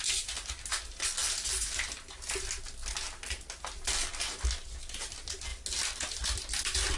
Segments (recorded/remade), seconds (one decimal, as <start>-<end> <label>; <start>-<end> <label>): 0.0-7.0 recorded